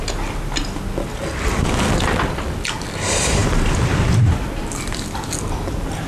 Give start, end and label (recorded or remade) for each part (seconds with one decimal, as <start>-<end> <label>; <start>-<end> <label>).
0.0-3.4 recorded; 3.4-4.3 remade; 4.3-6.1 recorded